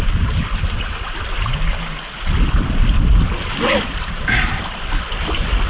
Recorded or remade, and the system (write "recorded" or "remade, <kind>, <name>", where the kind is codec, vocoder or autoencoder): recorded